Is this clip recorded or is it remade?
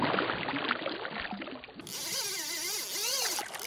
recorded